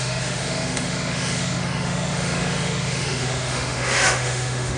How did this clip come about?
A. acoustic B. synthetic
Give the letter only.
B